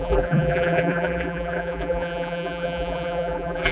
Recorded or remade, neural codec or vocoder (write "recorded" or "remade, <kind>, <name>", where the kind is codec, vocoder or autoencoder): remade, vocoder, BigVGAN v2